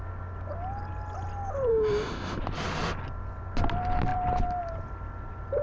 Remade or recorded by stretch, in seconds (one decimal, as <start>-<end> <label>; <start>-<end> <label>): 0.0-1.7 recorded; 1.7-2.4 remade; 2.4-5.6 recorded